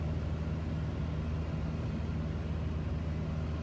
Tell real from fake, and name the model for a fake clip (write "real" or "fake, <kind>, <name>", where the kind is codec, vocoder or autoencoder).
real